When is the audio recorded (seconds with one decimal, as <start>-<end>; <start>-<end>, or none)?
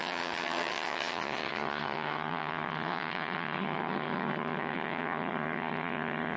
none